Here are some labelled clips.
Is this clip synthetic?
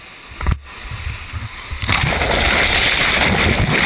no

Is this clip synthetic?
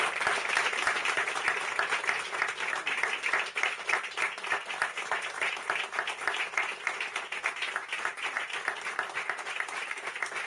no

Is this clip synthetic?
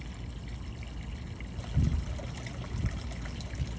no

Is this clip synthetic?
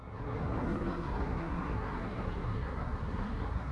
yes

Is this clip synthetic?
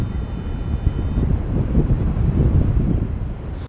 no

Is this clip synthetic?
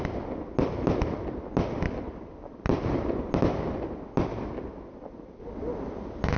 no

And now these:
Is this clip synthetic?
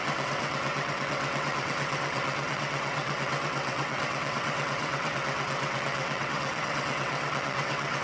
yes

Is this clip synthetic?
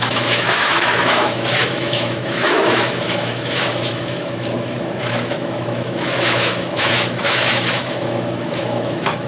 yes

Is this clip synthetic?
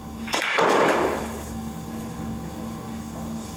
yes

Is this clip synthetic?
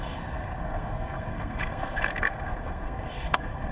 yes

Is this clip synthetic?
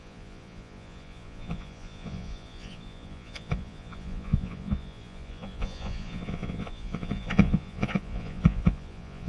yes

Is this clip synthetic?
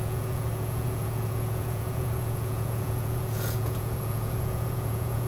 yes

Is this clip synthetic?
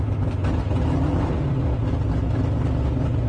no